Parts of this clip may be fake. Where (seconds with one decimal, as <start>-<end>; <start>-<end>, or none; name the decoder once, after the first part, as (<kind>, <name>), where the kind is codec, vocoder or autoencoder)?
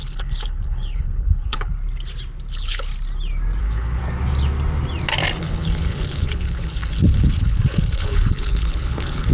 0.0-1.7 (codec, HILCodec); 2.5-2.9; 3.6-4.0; 5.4-9.3